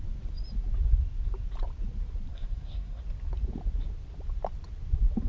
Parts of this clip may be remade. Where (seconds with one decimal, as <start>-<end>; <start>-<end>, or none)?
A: 2.3-3.0